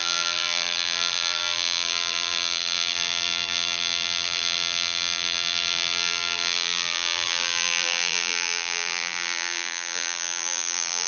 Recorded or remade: remade